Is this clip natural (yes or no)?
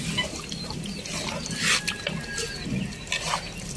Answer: yes